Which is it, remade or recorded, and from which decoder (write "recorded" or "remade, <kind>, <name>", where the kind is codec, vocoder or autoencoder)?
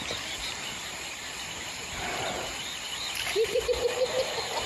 recorded